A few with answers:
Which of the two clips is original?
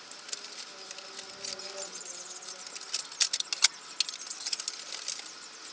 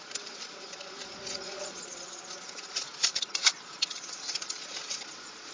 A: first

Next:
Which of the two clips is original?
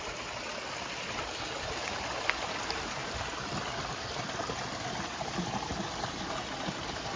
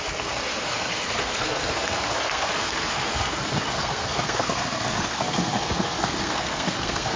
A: first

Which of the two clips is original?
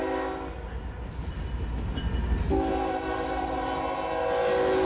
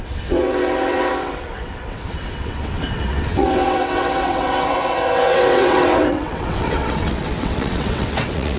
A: first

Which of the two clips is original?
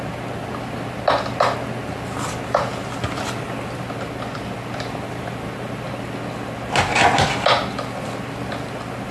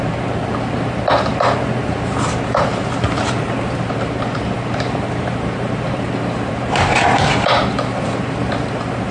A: first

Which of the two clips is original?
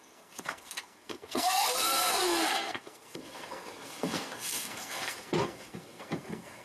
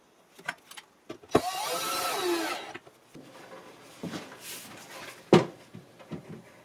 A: second